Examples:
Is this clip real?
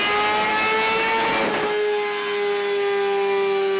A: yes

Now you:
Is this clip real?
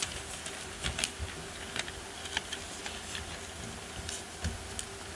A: yes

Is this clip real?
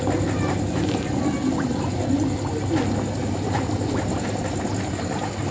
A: yes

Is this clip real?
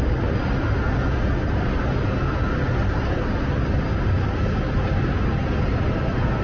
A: yes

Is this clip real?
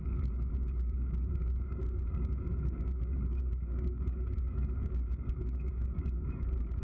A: no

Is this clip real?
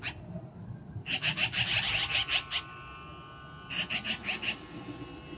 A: yes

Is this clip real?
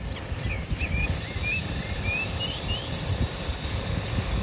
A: no